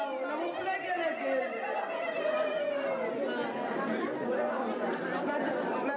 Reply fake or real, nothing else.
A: real